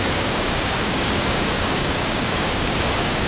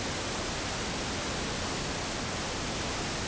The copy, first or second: first